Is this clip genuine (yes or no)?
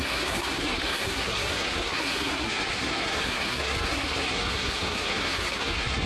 no